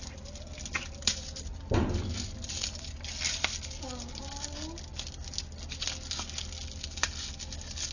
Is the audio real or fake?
real